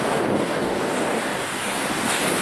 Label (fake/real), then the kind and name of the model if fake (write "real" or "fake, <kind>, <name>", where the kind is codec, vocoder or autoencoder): fake, codec, DAC